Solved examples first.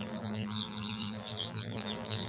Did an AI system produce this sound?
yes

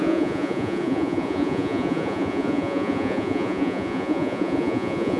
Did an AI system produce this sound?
yes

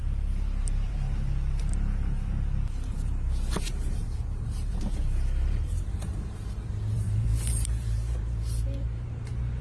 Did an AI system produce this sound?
yes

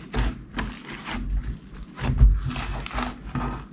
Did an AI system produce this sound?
no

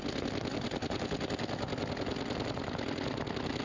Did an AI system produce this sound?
no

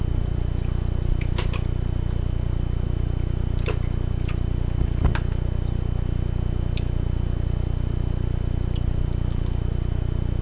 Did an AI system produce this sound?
no